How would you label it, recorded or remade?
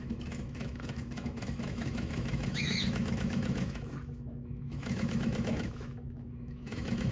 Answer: remade